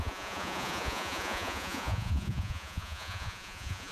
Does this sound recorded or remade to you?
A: remade